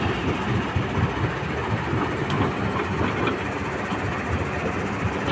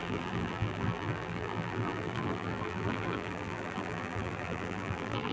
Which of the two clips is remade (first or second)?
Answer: second